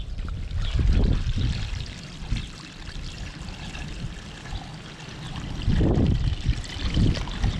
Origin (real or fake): real